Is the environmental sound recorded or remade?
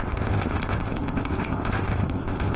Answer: remade